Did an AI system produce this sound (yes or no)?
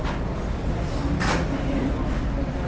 no